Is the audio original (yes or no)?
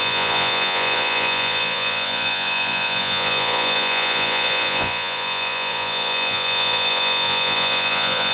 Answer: no